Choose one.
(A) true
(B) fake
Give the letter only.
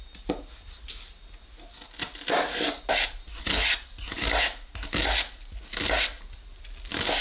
A